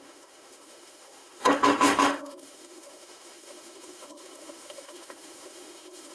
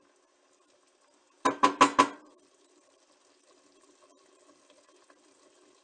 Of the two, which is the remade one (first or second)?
first